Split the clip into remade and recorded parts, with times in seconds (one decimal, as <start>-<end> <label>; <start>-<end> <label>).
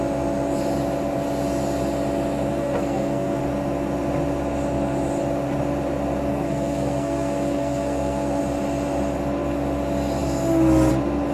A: 0.0-2.5 recorded; 2.5-3.4 remade; 3.4-6.3 recorded; 6.3-8.4 remade; 8.4-11.3 recorded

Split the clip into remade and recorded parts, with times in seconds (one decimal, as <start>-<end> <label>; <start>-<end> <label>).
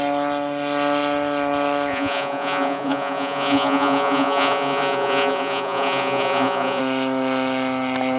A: 0.0-1.9 recorded; 1.9-6.8 remade; 6.8-8.2 recorded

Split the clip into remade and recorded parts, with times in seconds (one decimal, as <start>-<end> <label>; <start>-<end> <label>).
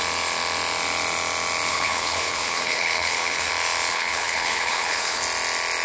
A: 0.0-1.7 recorded; 1.7-3.5 remade; 3.5-3.9 recorded; 3.9-5.2 remade; 5.2-5.8 recorded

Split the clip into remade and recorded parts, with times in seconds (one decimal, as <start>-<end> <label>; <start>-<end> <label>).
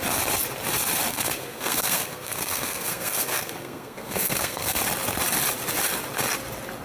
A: 0.0-1.1 recorded; 1.1-4.8 remade; 4.8-6.8 recorded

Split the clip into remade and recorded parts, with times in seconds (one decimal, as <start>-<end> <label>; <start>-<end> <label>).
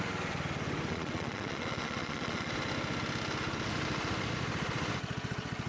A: 0.0-0.9 recorded; 0.9-2.5 remade; 2.5-5.7 recorded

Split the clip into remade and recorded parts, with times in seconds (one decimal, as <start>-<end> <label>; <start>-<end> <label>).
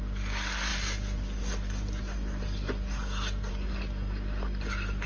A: 0.0-5.1 recorded